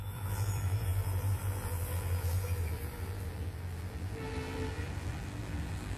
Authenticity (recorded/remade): remade